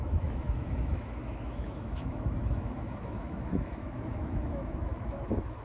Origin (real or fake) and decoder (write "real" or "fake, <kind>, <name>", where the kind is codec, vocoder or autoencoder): fake, autoencoder, DAC-VAE